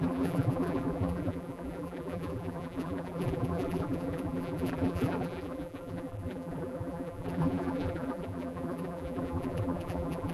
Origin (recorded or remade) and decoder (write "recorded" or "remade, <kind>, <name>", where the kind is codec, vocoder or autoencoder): remade, vocoder, BigVGAN v2